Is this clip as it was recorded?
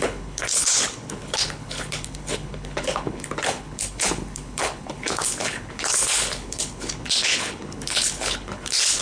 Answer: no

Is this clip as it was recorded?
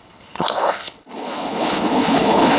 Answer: no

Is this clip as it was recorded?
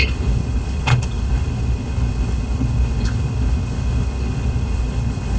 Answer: no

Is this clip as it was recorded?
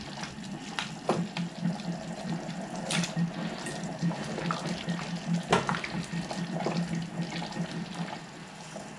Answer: yes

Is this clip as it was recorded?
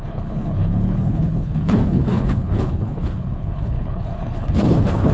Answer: no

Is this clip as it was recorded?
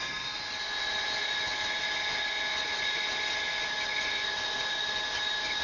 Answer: yes